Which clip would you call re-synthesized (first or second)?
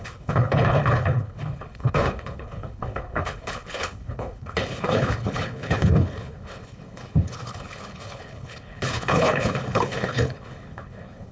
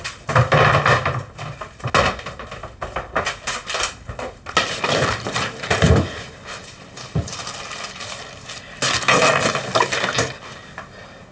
first